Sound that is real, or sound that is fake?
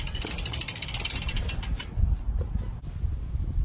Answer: real